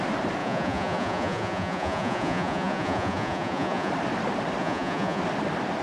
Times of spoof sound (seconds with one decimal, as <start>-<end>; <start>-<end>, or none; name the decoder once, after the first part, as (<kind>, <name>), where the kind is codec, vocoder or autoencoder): 0.4-3.9 (vocoder, Vocos); 4.6-5.2